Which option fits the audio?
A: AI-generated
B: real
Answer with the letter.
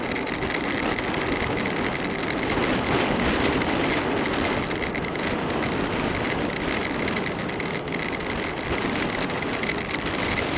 B